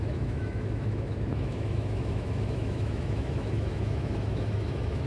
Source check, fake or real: fake